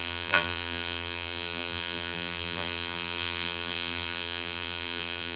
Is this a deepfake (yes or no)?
yes